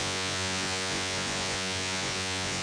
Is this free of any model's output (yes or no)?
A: no